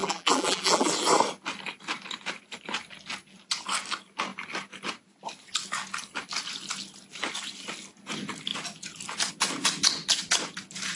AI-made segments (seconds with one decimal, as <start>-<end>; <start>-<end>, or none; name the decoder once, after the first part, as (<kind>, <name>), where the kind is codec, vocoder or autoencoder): 0.0-0.9 (vocoder, BigVGAN v2)